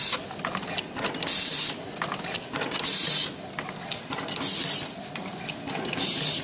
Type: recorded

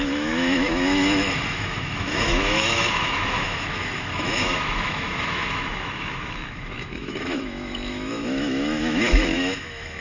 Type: remade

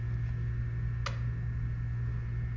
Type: recorded